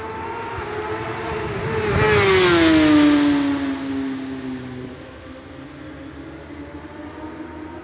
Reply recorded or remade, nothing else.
recorded